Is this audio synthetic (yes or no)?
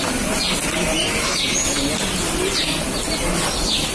no